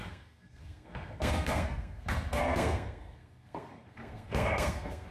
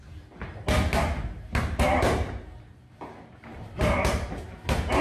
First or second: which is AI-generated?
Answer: first